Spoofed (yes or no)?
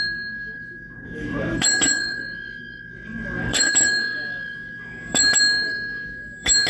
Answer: yes